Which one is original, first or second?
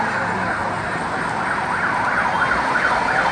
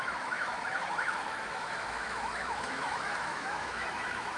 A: first